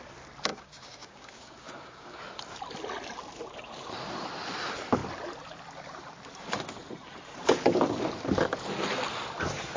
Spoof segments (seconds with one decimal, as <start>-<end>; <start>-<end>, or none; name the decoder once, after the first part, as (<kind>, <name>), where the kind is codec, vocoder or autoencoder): 0.5-2.2 (codec, DAC)